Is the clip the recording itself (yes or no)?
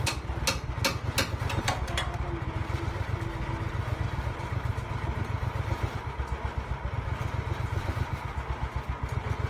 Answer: yes